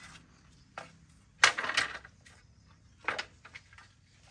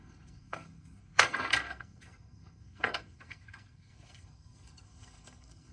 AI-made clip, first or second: second